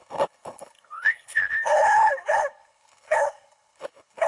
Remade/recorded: remade